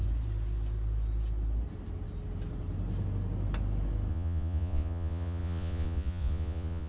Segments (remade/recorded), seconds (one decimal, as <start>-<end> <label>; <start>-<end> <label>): 0.0-4.1 recorded; 4.1-6.9 remade